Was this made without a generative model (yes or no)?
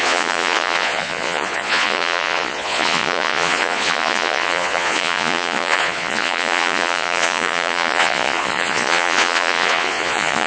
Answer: no